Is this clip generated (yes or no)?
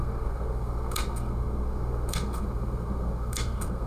yes